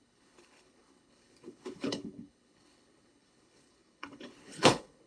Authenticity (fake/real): fake